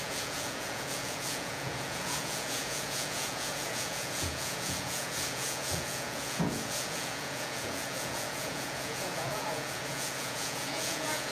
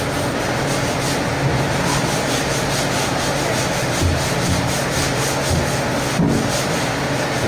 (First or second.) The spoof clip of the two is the first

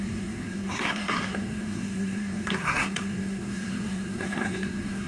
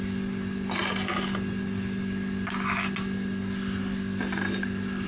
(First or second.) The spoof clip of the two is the first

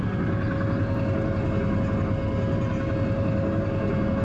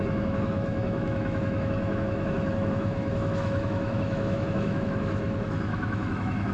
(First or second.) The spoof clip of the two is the second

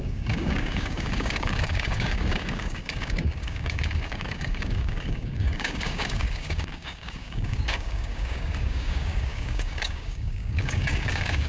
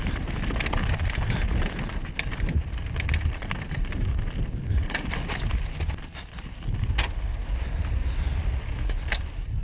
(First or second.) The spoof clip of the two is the first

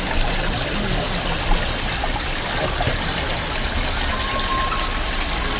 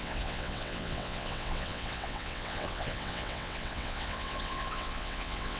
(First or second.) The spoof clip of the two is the second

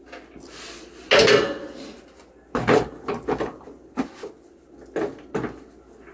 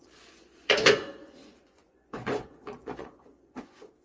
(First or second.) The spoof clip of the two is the second